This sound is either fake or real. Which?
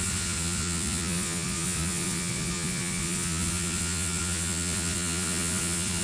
fake